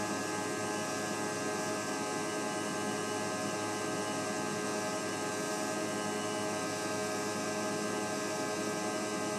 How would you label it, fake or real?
real